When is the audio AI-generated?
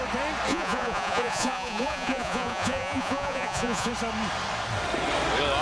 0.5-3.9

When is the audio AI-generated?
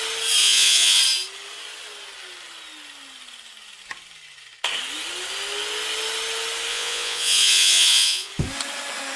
0.4-1.0; 6.7-8.3